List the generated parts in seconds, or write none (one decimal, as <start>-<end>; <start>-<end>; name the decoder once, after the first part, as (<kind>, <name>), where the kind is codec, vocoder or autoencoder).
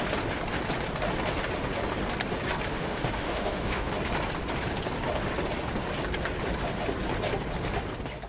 2.7-3.9 (autoencoder, DAC-VAE)